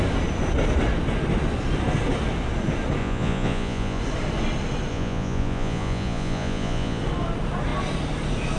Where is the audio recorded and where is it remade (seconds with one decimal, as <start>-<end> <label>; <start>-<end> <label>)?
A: 0.0-3.0 recorded; 3.0-4.0 remade; 4.0-4.9 recorded; 4.9-7.0 remade; 7.0-8.6 recorded